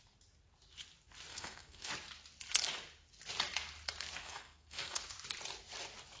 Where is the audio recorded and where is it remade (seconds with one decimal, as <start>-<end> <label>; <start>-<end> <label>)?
0.0-1.3 recorded; 1.3-1.9 remade; 1.9-4.2 recorded; 4.2-5.1 remade; 5.1-6.2 recorded